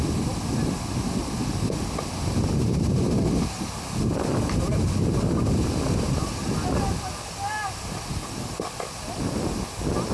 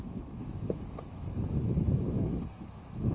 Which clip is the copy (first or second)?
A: second